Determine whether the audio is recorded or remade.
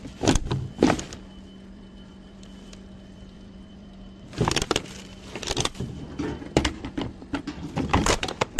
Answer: remade